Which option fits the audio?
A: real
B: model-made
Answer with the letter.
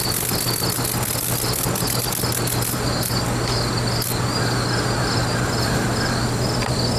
A